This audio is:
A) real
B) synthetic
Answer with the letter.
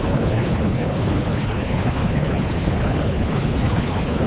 B